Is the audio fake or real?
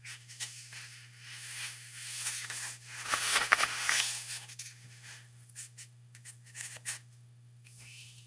fake